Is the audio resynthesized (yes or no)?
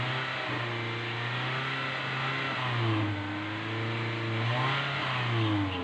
no